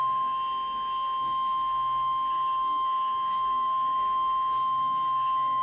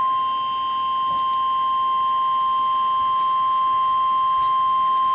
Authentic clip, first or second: second